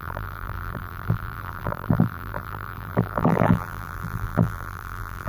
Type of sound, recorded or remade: remade